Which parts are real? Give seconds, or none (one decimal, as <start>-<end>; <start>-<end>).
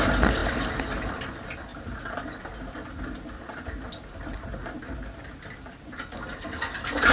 0.0-7.1